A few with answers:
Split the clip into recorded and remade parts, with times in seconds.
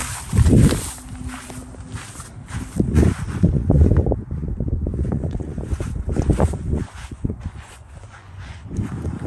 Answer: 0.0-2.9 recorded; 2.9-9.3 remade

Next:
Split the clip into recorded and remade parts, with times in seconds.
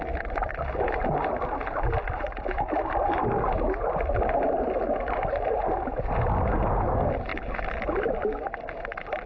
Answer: 0.0-9.3 recorded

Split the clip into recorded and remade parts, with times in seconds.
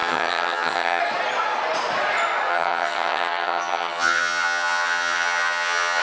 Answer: 0.0-1.0 remade; 1.0-2.5 recorded; 2.5-6.0 remade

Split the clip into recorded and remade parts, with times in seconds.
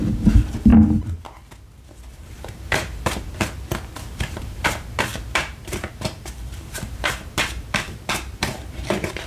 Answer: 0.0-0.7 remade; 0.7-2.3 recorded; 2.3-9.3 remade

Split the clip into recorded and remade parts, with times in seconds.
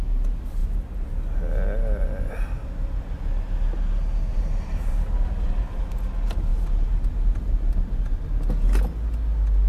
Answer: 0.0-4.3 recorded; 4.3-5.8 remade; 5.8-6.5 recorded; 6.5-7.1 remade; 7.1-9.7 recorded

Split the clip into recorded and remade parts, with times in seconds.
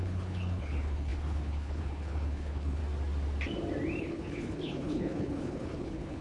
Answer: 0.0-2.8 remade; 2.8-4.0 recorded; 4.0-6.2 remade